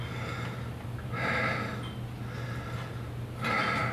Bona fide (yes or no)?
yes